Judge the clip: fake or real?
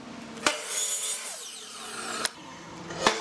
real